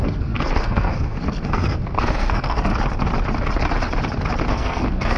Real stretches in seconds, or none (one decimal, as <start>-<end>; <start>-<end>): 2.7-4.5